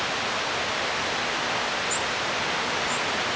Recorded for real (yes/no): yes